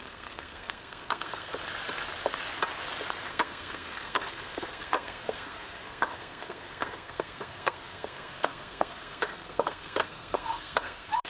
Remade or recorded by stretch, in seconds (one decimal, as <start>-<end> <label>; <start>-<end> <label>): 0.0-1.5 remade; 1.5-3.3 recorded; 3.3-11.3 remade